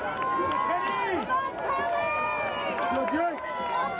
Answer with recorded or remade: recorded